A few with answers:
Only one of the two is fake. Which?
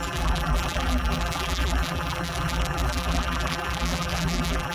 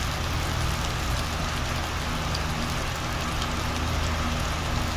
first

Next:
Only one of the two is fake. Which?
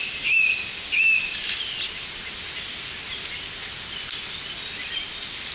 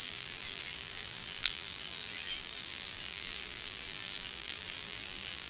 second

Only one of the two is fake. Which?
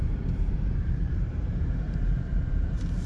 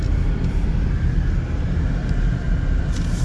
first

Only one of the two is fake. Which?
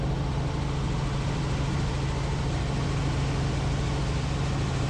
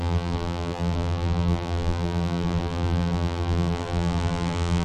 second